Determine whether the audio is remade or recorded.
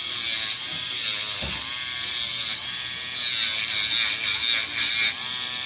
recorded